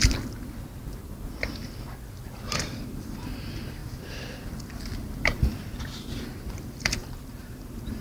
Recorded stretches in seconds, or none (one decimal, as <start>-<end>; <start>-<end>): 0.0-3.8; 4.5-7.0